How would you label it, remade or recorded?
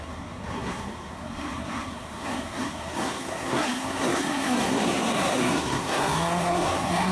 remade